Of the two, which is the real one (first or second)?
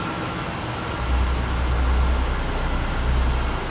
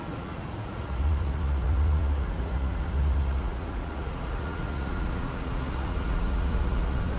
first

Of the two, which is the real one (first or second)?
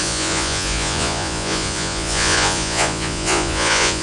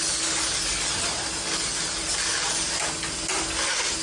second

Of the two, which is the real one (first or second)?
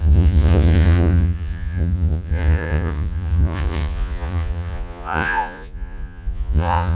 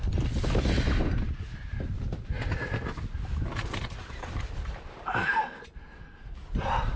second